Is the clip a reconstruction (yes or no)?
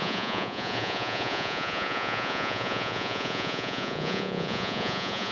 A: yes